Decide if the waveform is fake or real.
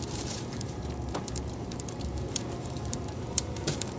fake